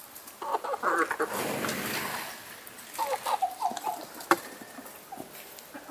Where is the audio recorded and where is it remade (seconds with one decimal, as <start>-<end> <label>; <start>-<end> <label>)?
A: 0.0-5.9 recorded